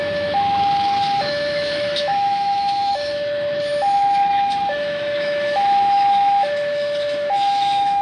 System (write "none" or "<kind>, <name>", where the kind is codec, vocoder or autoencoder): autoencoder, DAC-VAE